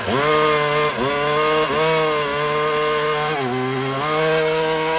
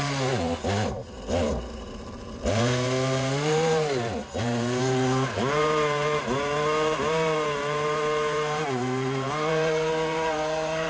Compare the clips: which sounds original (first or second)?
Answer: first